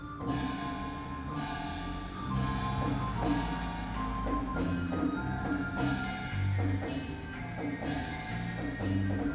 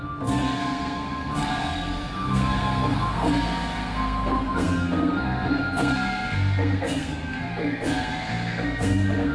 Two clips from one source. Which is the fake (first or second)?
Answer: second